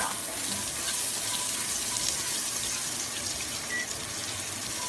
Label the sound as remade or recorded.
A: recorded